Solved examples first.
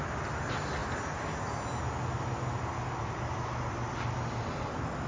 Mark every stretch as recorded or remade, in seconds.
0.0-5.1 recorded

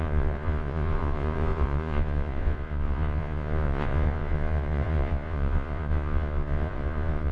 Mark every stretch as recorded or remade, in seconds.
0.0-7.3 remade

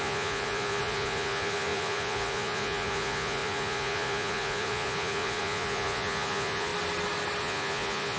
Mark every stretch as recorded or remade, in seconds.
0.0-6.7 remade; 6.7-7.4 recorded; 7.4-8.2 remade

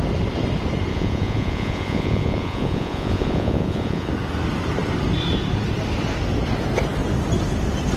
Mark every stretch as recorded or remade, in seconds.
0.0-0.9 recorded; 0.9-4.1 remade; 4.1-8.0 recorded

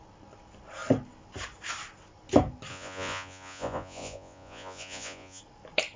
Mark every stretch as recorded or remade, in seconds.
0.0-2.7 recorded; 2.7-5.4 remade; 5.4-6.0 recorded

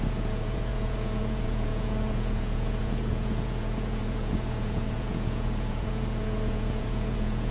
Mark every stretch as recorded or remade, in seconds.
0.0-7.5 remade

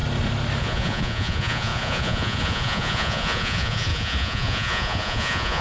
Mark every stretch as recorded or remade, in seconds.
0.0-0.6 recorded; 0.6-5.6 remade

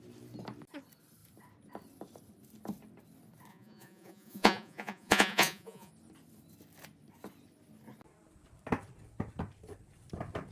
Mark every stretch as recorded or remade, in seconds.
0.0-3.5 recorded; 3.5-5.9 remade; 5.9-10.5 recorded